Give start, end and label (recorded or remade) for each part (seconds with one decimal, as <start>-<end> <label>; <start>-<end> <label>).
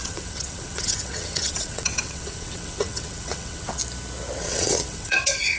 0.0-3.8 remade; 3.8-4.4 recorded; 4.4-5.6 remade